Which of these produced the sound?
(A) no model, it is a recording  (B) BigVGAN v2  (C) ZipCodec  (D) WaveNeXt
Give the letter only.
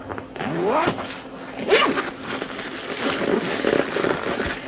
A